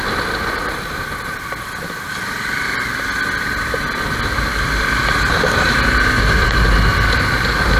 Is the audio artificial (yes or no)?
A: no